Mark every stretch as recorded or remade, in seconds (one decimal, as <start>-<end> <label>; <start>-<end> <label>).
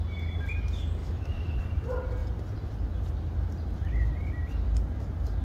0.0-1.0 recorded; 1.0-1.6 remade; 1.6-5.4 recorded